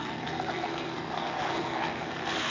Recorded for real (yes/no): no